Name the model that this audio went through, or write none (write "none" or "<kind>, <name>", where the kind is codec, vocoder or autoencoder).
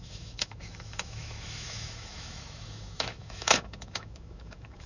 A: autoencoder, DAC-VAE